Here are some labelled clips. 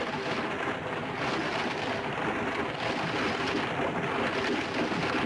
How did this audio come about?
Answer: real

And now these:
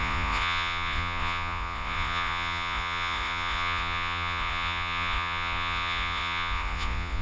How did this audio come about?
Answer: fake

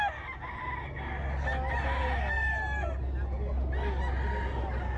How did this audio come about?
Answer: real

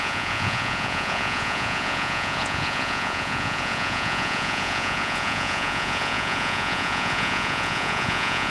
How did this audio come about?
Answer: fake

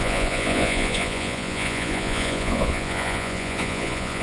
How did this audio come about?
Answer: fake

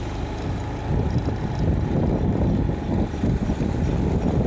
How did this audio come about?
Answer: real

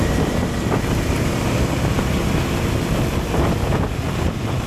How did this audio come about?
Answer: real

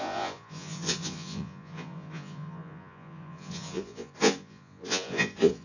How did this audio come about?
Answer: fake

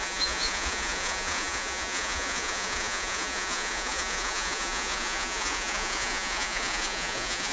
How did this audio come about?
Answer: fake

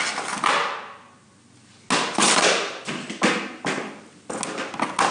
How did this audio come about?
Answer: real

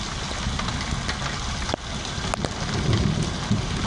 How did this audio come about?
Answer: real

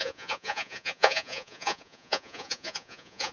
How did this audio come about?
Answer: fake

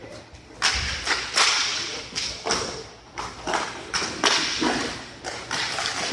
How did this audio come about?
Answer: real